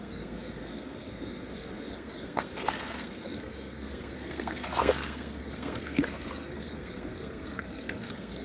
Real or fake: fake